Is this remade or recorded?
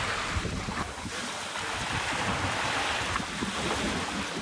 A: recorded